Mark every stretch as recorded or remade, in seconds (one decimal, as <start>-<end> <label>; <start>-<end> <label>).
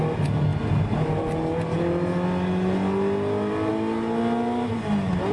0.0-5.3 recorded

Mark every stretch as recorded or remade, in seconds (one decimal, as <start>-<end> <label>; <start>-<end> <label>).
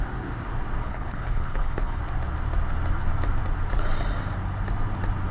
0.0-0.8 recorded; 0.8-2.0 remade; 2.0-5.3 recorded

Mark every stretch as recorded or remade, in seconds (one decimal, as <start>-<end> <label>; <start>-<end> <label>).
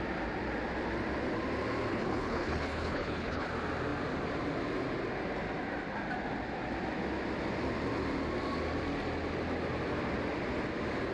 0.0-1.9 recorded; 1.9-3.5 remade; 3.5-11.1 recorded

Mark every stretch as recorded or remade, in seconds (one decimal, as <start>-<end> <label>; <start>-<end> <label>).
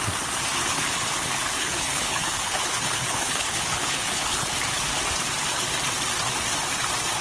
0.0-0.7 recorded; 0.7-4.5 remade; 4.5-7.2 recorded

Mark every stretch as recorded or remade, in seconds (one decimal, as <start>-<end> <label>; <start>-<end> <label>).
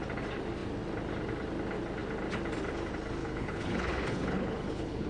0.0-3.2 recorded; 3.2-5.1 remade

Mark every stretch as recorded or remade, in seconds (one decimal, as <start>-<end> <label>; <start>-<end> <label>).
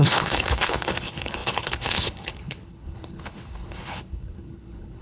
0.0-5.0 remade